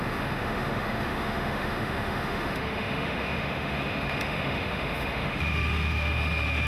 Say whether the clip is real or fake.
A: fake